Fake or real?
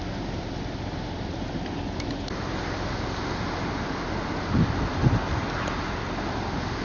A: real